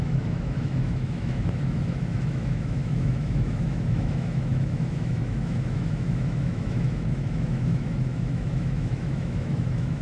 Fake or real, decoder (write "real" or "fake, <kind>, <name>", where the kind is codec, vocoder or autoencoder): fake, autoencoder, DAC-VAE